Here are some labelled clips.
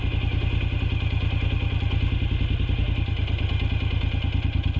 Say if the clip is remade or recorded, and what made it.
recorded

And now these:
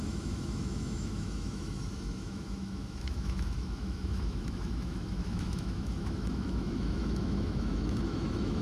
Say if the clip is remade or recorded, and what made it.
remade, autoencoder, DAC-VAE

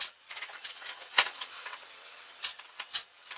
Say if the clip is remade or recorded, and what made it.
remade, vocoder, WaveNeXt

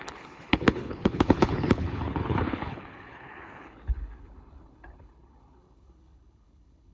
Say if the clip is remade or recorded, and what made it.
remade, codec, HILCodec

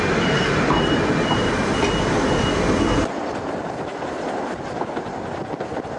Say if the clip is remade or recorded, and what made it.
recorded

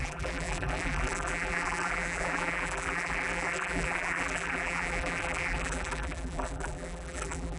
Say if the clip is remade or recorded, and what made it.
remade, vocoder, BigVGAN v2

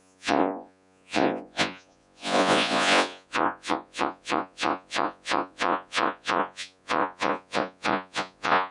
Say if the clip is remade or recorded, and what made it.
remade, vocoder, Vocos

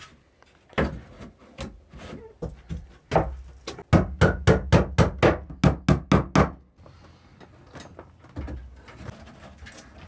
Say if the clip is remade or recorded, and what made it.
recorded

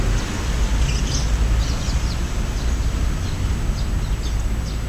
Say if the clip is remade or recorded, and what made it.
recorded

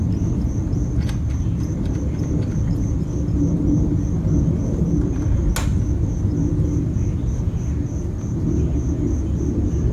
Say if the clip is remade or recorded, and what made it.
recorded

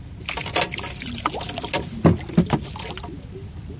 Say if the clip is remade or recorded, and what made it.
recorded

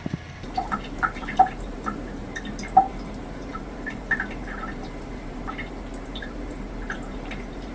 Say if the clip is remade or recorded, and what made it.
remade, vocoder, BigVGAN v2